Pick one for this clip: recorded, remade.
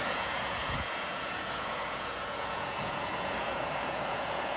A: remade